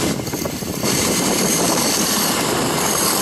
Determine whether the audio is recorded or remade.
remade